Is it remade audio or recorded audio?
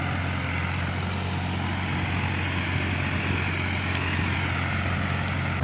recorded